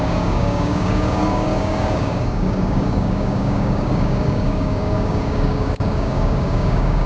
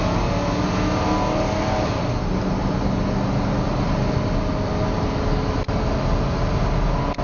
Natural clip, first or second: second